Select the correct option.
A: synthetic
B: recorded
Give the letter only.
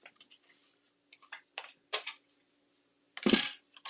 B